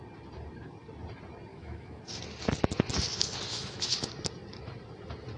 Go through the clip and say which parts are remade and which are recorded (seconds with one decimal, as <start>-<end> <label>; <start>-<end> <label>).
0.0-1.5 recorded; 1.5-2.0 remade; 2.0-3.5 recorded; 3.5-4.1 remade; 4.1-5.4 recorded